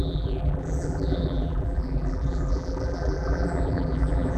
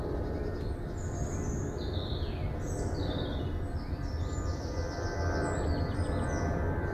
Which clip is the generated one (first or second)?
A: first